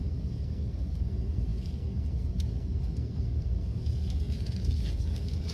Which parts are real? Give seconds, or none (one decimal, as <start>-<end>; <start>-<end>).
none